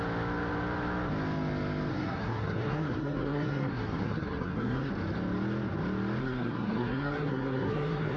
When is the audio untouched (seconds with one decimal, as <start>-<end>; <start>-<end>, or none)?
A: 0.0-1.9; 4.9-6.2